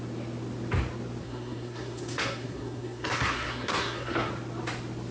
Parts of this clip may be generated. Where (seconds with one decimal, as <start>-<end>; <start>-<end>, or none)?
1.2-4.3